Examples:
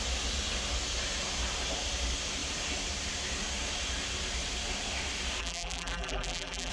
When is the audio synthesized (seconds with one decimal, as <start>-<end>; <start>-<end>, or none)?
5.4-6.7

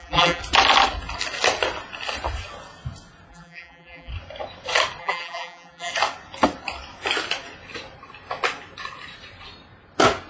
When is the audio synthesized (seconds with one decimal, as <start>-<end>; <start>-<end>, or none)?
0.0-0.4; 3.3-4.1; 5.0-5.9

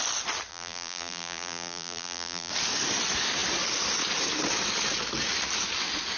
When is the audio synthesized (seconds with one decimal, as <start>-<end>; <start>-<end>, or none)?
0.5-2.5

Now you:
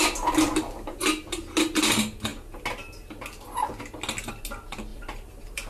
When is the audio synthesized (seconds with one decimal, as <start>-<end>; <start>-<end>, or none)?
4.9-5.7